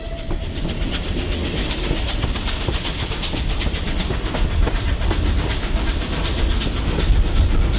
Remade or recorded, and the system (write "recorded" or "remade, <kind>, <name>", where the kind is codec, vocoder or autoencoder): recorded